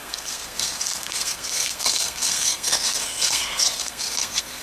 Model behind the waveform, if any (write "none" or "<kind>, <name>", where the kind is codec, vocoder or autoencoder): codec, SNAC